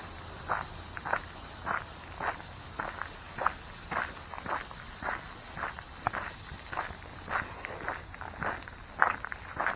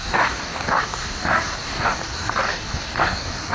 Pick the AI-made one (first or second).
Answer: second